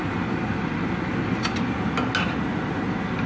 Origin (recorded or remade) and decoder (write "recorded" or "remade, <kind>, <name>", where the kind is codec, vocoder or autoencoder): recorded